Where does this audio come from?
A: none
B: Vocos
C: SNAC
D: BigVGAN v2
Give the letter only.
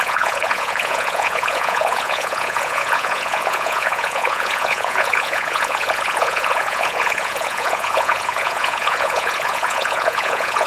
B